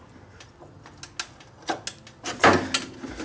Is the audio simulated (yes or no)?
no